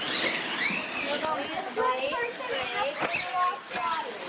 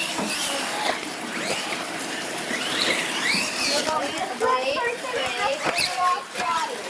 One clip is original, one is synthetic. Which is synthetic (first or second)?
second